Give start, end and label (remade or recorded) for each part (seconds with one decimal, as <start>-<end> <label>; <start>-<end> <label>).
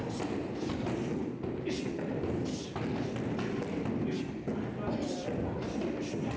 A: 0.0-6.4 recorded